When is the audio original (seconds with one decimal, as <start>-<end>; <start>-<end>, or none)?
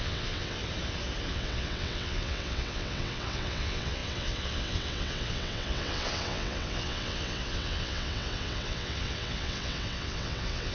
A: 0.6-1.3